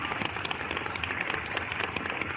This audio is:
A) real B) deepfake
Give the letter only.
A